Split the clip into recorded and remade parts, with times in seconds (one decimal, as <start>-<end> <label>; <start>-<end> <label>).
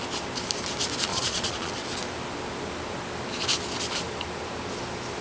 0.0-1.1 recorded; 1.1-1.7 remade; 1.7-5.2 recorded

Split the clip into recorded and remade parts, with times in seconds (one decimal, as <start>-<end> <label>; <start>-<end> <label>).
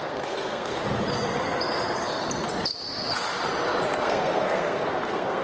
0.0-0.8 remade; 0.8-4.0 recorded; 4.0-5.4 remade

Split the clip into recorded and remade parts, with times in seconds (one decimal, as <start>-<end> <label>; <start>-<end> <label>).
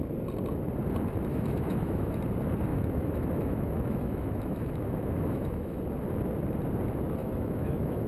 0.0-1.3 recorded; 1.3-2.2 remade; 2.2-2.7 recorded; 2.7-5.8 remade; 5.8-7.2 recorded; 7.2-8.1 remade